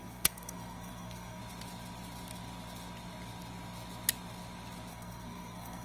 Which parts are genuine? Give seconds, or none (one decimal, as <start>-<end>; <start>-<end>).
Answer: 1.4-4.9